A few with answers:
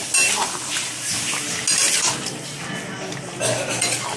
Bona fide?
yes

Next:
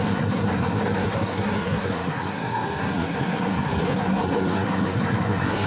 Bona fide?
no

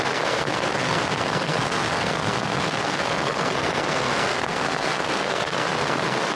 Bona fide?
no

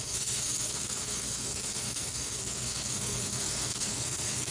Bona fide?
no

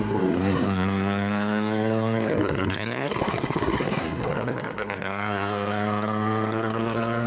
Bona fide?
no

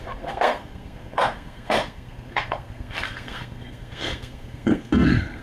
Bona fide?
no